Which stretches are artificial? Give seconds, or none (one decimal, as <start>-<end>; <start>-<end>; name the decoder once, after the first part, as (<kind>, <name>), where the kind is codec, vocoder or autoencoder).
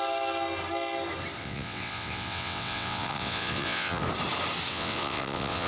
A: 1.4-4.0 (vocoder, WaveNeXt); 4.7-5.7